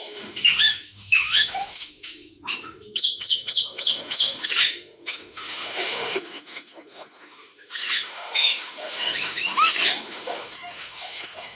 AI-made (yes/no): yes